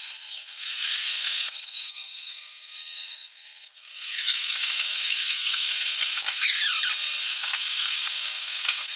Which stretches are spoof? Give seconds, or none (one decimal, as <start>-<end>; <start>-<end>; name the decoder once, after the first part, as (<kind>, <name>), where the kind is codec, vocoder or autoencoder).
0.0-6.6 (codec, SNAC); 7.2-9.0